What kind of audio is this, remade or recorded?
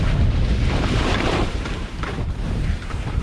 remade